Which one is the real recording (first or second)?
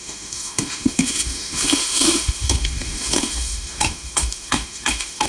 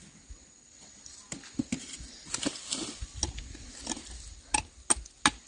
second